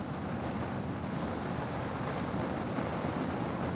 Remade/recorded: recorded